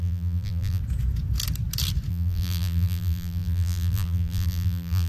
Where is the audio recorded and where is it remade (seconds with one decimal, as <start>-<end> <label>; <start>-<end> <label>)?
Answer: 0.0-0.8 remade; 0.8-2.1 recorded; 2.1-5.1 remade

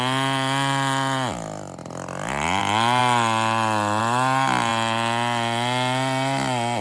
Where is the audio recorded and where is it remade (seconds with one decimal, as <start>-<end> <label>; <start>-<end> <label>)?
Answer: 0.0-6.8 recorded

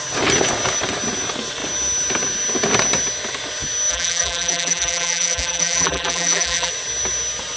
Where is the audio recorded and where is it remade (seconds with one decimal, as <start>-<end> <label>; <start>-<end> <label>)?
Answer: 0.0-3.9 recorded; 3.9-6.7 remade; 6.7-7.6 recorded

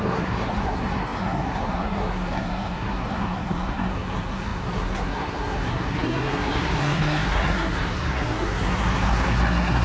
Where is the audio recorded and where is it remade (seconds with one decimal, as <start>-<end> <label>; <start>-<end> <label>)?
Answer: 0.0-9.8 remade

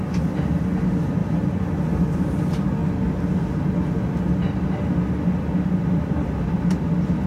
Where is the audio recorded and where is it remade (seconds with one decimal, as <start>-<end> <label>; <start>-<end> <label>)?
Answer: 0.0-7.3 recorded